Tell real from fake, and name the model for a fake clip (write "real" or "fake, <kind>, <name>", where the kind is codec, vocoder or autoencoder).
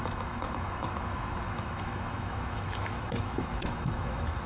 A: fake, autoencoder, DAC-VAE